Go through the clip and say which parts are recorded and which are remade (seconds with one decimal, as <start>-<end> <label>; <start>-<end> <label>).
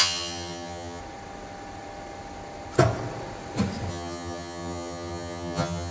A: 0.0-1.0 remade; 1.0-3.9 recorded; 3.9-5.9 remade